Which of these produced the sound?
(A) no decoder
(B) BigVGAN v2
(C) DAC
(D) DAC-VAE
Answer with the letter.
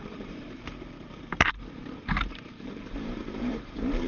B